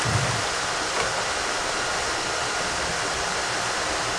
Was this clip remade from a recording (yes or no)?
no